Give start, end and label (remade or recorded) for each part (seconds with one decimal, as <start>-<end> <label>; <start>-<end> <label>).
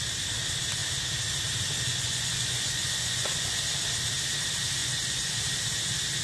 0.0-1.9 recorded; 1.9-3.6 remade; 3.6-4.8 recorded; 4.8-5.3 remade; 5.3-6.2 recorded